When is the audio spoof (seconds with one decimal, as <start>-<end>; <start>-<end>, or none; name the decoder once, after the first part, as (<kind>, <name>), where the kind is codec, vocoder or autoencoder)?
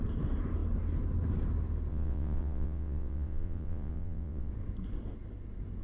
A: 1.9-4.5 (vocoder, WaveNeXt)